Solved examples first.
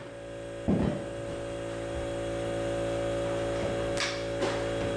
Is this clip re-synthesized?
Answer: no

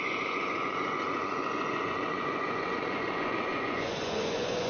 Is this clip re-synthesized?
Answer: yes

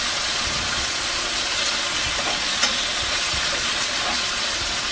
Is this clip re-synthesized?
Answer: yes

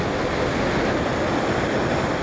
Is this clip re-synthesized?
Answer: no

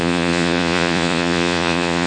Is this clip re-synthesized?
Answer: yes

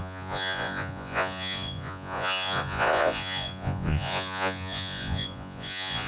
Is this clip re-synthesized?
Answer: yes